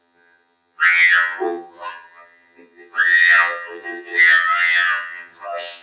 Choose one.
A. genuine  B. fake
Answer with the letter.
B